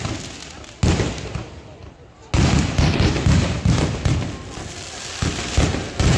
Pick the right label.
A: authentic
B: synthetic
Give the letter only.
A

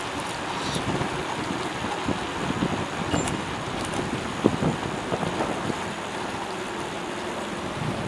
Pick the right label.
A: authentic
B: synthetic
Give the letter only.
A